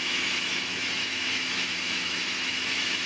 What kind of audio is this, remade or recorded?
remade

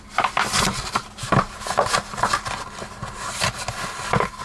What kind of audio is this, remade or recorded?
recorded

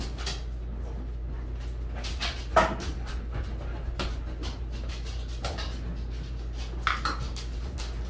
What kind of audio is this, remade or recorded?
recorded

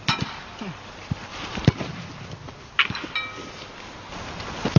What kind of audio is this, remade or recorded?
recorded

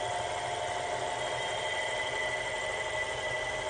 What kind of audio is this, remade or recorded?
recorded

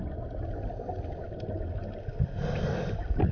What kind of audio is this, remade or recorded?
recorded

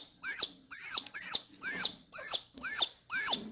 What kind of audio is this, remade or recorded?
recorded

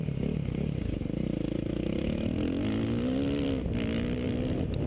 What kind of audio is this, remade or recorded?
recorded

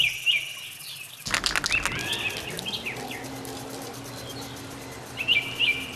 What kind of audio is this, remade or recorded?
recorded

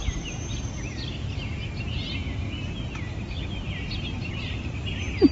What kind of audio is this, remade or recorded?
recorded